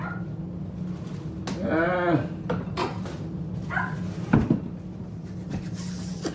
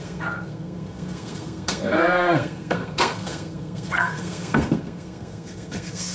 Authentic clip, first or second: first